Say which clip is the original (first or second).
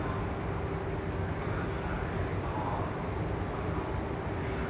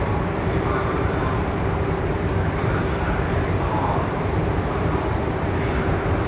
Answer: first